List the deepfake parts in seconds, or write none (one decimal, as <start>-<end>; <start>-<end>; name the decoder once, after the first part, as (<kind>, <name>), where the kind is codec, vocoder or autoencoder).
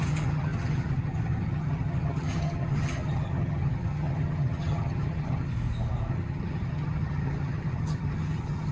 0.0-5.5 (vocoder, HiFi-GAN); 6.1-8.7